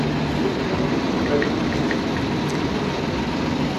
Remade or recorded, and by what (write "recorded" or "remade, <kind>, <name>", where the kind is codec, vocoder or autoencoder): recorded